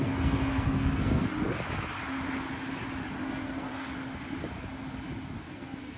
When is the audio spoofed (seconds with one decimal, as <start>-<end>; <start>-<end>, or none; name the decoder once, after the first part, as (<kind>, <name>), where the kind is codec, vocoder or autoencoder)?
0.0-1.3 (codec, SNAC); 3.2-3.7; 5.4-6.0